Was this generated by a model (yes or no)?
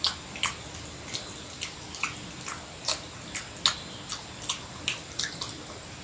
no